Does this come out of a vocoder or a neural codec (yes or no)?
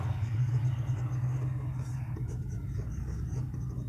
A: yes